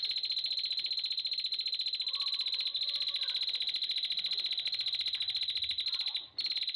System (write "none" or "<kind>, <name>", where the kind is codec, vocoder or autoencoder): none